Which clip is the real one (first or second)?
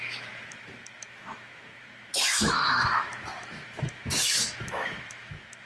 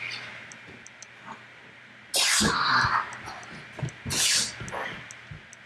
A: second